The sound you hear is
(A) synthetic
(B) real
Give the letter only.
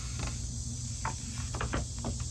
B